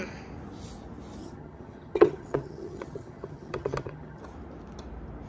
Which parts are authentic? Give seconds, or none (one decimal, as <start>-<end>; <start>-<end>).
0.0-1.2; 4.2-5.3